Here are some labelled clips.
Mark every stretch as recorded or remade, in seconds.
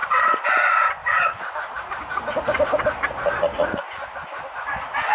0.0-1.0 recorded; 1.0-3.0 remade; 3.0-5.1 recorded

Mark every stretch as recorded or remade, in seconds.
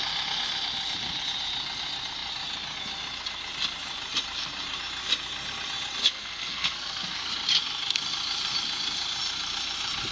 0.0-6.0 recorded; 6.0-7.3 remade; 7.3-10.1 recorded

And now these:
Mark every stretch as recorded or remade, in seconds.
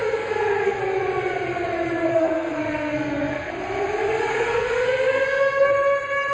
0.0-0.8 remade; 0.8-2.1 recorded; 2.1-3.5 remade; 3.5-4.3 recorded; 4.3-5.7 remade; 5.7-6.3 recorded